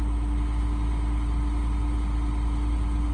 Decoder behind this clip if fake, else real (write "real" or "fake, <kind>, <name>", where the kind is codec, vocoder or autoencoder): real